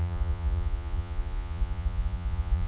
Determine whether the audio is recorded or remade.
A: remade